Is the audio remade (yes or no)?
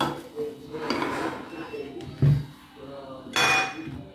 no